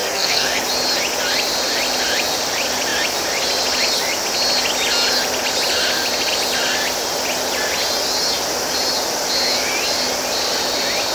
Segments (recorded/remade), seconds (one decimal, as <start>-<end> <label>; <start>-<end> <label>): 0.0-0.6 remade; 0.6-11.1 recorded